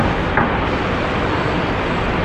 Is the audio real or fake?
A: real